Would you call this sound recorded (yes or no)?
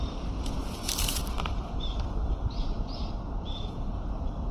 no